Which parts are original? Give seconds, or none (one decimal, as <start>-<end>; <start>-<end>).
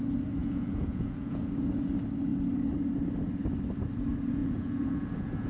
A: 0.0-0.4; 1.5-4.4